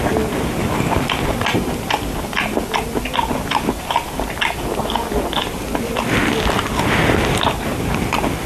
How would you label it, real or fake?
real